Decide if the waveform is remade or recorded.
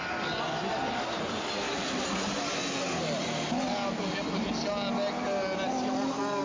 recorded